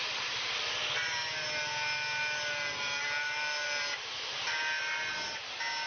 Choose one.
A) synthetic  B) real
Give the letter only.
B